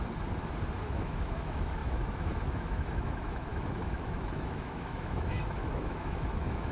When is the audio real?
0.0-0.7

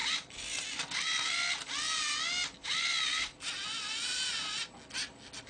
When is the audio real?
0.0-5.5

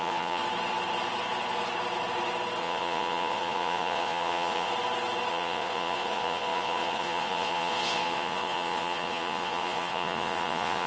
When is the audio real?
0.4-2.6; 4.7-5.3

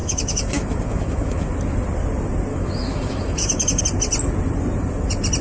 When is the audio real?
1.5-2.5; 3.8-5.4

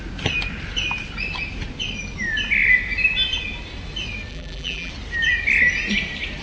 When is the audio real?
0.0-4.3; 4.9-6.4